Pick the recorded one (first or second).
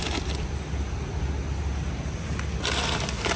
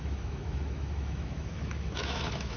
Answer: first